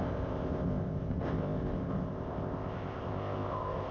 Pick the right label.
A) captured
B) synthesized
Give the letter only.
B